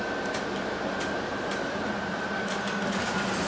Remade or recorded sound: recorded